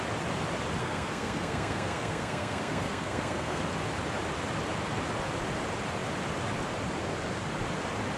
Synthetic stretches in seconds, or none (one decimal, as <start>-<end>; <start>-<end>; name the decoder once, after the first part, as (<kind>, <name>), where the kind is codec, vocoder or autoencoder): 0.8-3.6 (codec, SNAC)